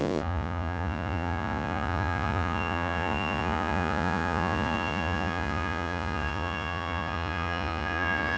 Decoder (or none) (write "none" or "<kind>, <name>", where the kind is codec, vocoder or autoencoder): vocoder, Vocos